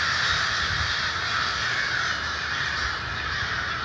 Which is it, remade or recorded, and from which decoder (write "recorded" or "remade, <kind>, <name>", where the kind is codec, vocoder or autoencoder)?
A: recorded